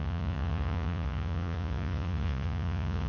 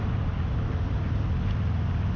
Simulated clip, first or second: first